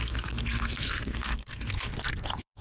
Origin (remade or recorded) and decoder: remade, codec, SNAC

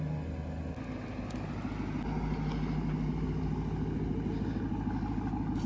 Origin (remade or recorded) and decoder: recorded